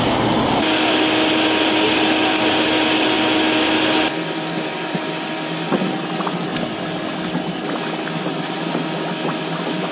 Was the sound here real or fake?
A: real